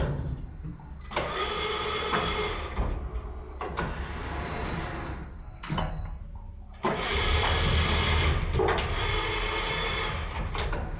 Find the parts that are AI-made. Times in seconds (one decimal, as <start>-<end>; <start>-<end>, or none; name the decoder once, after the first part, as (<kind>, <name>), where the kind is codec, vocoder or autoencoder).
5.4-6.2 (codec, SNAC)